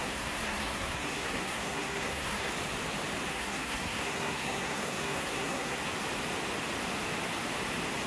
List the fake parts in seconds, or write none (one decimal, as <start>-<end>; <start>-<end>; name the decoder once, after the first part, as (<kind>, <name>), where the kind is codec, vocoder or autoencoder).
0.0-2.5 (codec, SNAC); 3.3-5.8